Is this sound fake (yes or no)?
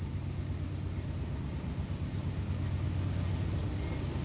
no